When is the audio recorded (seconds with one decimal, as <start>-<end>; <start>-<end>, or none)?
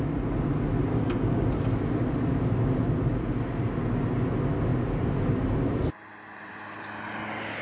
0.0-0.9; 1.5-7.6